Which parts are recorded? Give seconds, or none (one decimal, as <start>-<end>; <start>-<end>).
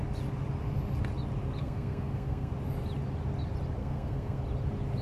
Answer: 0.0-1.6; 2.5-3.8; 4.4-5.0